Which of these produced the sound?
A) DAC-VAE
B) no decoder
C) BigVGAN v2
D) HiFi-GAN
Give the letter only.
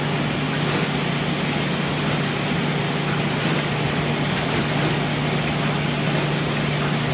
B